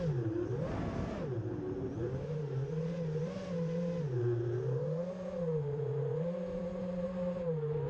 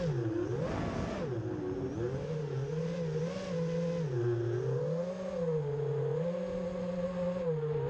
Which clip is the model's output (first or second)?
first